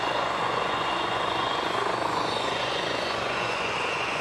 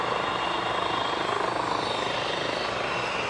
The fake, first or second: first